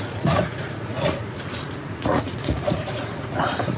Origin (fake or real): fake